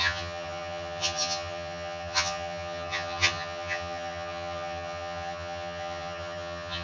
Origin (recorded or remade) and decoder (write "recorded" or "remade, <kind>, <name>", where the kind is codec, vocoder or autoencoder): remade, vocoder, HiFi-GAN